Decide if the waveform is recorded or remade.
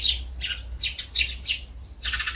recorded